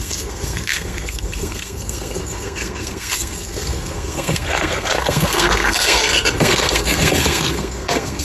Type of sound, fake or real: fake